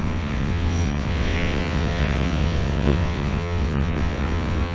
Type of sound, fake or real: fake